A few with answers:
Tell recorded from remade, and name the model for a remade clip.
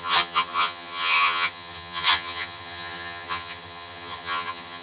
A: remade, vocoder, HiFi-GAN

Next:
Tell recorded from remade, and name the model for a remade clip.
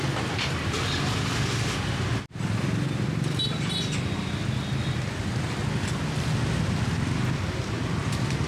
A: recorded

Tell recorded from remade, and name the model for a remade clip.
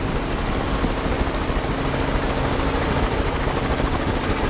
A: recorded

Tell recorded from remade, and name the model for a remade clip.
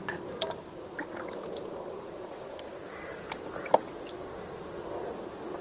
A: recorded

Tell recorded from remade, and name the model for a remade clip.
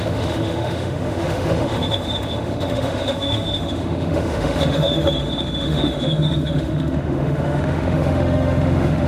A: remade, autoencoder, DAC-VAE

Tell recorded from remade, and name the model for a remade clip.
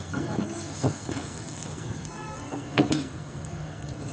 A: remade, codec, SNAC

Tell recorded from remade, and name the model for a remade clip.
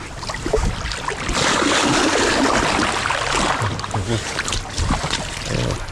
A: recorded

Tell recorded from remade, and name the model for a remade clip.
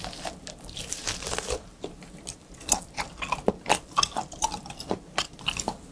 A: recorded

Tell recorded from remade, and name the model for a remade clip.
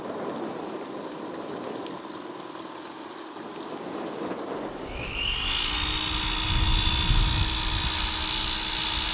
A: recorded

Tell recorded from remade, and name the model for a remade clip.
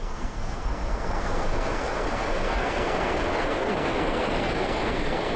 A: remade, codec, SNAC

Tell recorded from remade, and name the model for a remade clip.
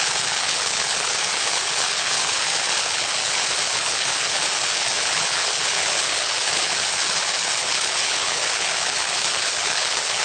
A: remade, codec, HILCodec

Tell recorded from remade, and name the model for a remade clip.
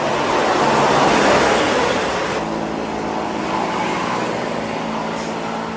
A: recorded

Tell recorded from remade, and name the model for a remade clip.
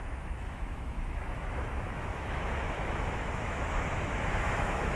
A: remade, autoencoder, DAC-VAE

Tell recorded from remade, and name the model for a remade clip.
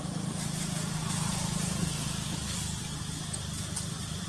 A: recorded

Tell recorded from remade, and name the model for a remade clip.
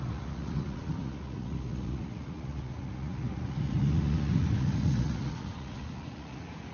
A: remade, vocoder, Vocos